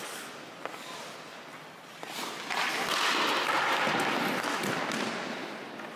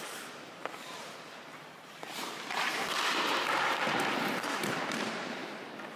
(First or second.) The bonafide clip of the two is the first